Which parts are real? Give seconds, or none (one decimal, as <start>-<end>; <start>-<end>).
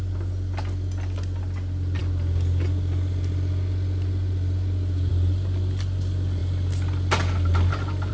0.0-8.1